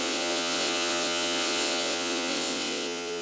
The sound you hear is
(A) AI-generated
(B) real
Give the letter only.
A